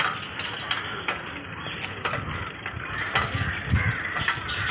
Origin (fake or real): real